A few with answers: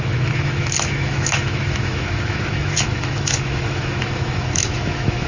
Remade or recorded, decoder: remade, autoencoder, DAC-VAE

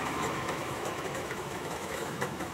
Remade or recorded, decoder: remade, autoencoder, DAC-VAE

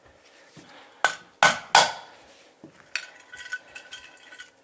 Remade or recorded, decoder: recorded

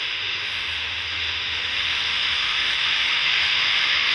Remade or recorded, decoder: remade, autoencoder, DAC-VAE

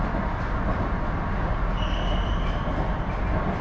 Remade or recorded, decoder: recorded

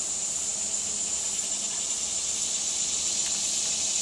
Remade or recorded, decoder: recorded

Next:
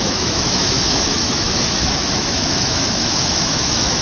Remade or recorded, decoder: remade, autoencoder, DAC-VAE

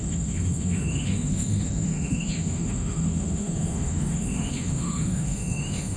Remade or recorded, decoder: remade, autoencoder, DAC-VAE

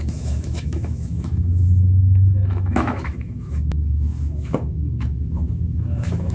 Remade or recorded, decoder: remade, autoencoder, DAC-VAE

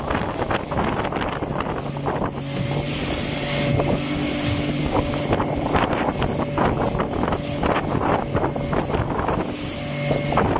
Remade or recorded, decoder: recorded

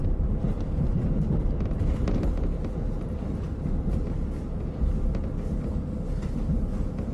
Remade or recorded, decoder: recorded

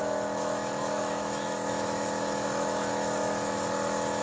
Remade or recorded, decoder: remade, autoencoder, DAC-VAE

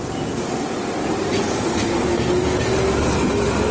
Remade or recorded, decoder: recorded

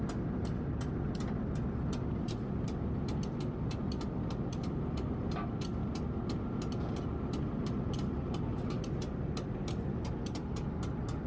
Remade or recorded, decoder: recorded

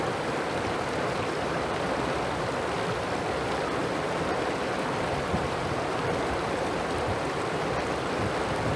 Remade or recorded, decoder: recorded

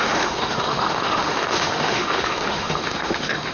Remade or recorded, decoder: remade, autoencoder, DAC-VAE